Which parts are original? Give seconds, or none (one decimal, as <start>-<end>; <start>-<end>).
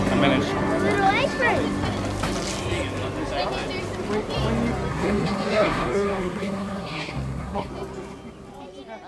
0.0-4.9; 7.7-9.1